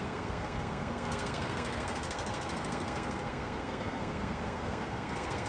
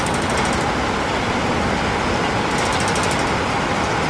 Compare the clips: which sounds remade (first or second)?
first